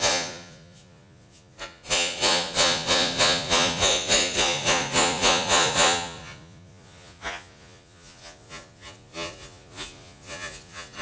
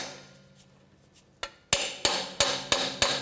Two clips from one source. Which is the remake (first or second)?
first